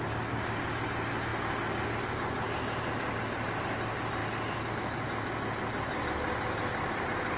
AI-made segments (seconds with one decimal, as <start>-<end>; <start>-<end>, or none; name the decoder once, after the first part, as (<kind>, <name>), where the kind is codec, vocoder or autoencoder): none